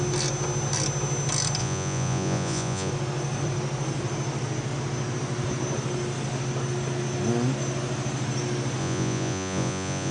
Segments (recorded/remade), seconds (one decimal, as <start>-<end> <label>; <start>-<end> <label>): 0.0-1.6 recorded; 1.6-2.9 remade; 2.9-8.8 recorded; 8.8-10.1 remade